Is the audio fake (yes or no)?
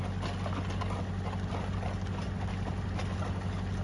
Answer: no